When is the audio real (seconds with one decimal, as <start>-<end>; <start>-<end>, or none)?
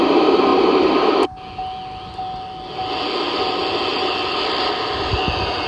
0.0-0.5; 1.2-3.9; 5.2-5.7